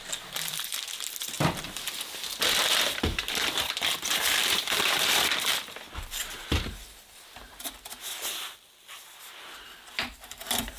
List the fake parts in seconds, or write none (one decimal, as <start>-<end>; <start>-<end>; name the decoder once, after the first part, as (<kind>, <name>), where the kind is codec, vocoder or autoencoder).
0.0-10.8 (vocoder, BigVGAN v2)